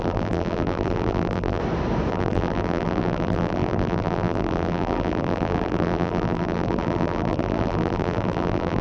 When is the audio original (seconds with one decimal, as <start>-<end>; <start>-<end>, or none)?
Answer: 1.6-2.1